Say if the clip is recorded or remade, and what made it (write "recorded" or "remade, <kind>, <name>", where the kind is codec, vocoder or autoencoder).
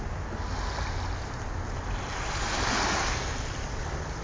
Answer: recorded